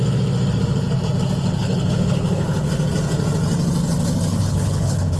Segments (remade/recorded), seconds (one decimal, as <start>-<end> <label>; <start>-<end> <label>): 0.0-1.6 recorded; 1.6-2.7 remade; 2.7-4.3 recorded; 4.3-5.2 remade